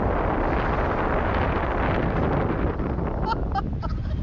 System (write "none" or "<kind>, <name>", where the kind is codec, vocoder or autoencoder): none